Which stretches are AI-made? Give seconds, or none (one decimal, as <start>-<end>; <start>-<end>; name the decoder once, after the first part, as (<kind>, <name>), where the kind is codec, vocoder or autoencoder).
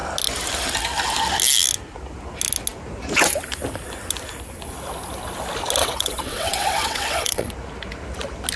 5.8-7.5 (vocoder, WaveNeXt)